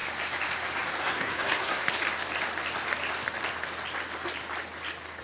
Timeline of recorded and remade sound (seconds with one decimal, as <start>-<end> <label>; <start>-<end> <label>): 0.0-1.0 recorded; 1.0-1.8 remade; 1.8-5.2 recorded